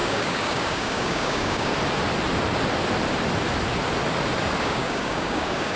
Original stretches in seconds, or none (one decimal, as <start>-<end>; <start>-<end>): 1.7-4.6